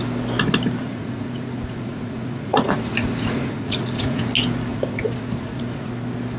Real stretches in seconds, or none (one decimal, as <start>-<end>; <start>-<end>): 0.0-0.8; 4.3-4.7; 5.9-6.4